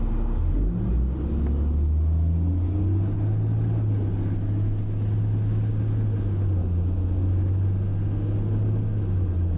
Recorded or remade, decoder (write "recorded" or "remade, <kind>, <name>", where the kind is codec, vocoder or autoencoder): recorded